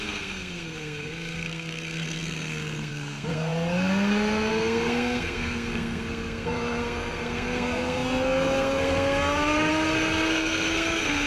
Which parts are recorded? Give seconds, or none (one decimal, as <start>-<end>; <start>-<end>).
none